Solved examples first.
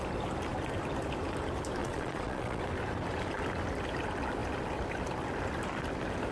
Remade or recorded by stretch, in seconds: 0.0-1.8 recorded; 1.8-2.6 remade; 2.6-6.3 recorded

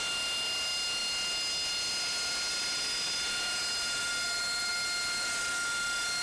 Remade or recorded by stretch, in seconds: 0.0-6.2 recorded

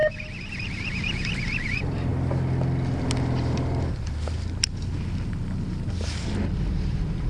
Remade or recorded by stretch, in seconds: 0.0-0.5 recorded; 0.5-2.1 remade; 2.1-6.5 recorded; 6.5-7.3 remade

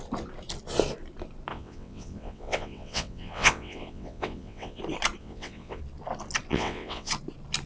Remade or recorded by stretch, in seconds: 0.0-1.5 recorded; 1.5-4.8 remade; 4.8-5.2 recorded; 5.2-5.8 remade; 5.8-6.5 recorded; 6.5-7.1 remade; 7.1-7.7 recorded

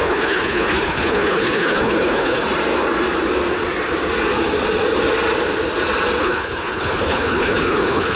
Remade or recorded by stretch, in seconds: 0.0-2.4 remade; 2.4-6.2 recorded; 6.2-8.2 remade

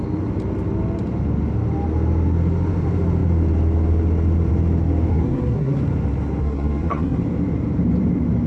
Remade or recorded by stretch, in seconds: 0.0-5.1 recorded; 5.1-5.8 remade; 5.8-6.4 recorded; 6.4-7.2 remade; 7.2-8.5 recorded

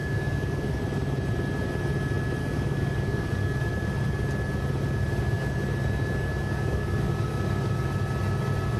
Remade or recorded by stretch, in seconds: 0.0-0.8 remade; 0.8-2.4 recorded; 2.4-3.7 remade; 3.7-6.3 recorded; 6.3-7.7 remade; 7.7-8.8 recorded